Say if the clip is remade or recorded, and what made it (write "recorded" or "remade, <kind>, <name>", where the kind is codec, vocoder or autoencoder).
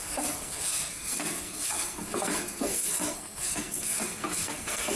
remade, codec, SNAC